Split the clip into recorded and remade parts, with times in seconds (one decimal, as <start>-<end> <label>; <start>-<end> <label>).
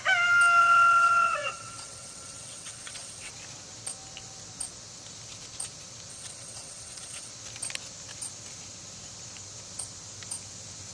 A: 0.0-0.6 recorded; 0.6-3.3 remade; 3.3-6.1 recorded; 6.1-7.3 remade; 7.3-10.9 recorded